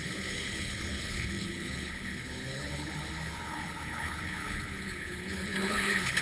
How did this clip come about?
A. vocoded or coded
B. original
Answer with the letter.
A